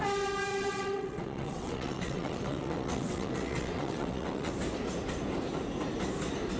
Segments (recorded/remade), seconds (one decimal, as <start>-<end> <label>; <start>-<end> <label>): 0.0-0.5 recorded; 0.5-4.5 remade; 4.5-6.6 recorded